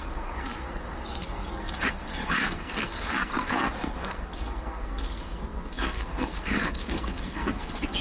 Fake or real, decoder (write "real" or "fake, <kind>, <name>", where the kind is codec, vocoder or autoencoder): fake, codec, SNAC